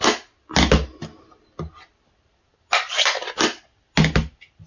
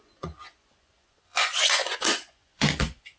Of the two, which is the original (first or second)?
first